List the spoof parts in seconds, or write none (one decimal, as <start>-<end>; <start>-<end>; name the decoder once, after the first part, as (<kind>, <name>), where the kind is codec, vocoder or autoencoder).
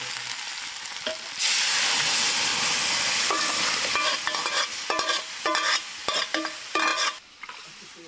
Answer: none